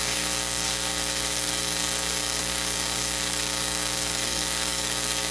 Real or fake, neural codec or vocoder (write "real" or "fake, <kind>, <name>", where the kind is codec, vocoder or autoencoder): fake, codec, DAC